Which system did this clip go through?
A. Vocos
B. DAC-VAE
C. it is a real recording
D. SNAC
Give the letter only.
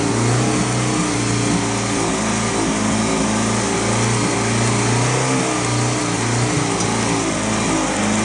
C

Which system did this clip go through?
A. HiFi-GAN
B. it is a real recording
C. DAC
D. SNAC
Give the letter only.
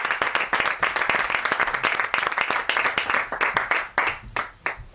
B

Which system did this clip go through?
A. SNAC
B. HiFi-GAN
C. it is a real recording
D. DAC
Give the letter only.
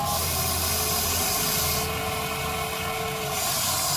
C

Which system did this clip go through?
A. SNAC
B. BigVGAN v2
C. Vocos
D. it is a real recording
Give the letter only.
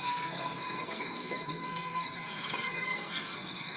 A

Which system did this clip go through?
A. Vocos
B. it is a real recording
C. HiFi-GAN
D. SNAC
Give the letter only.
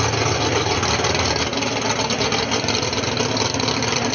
B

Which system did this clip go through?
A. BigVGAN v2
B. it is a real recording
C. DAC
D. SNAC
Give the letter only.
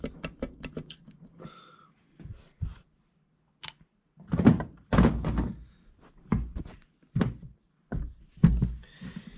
B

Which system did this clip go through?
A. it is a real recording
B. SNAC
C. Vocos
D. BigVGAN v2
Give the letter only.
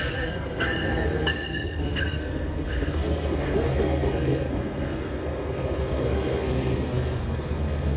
B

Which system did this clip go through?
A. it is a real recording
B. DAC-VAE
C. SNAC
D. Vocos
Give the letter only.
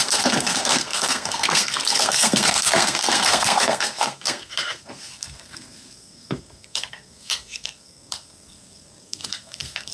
C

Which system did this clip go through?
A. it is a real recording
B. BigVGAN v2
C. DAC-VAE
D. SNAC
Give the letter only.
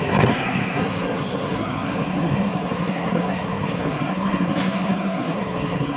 D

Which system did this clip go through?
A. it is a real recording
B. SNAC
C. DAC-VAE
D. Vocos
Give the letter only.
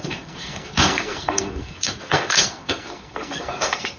B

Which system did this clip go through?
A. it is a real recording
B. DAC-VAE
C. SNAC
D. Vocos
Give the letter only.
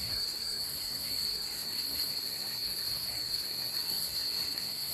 C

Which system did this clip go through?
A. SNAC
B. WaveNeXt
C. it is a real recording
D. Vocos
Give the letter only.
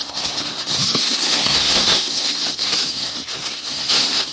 A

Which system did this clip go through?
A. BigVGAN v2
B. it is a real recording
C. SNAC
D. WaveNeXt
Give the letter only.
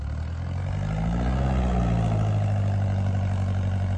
B